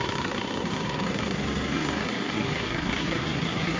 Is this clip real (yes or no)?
no